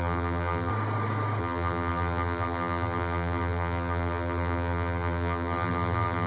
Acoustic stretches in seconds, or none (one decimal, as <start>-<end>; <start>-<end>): 0.7-1.4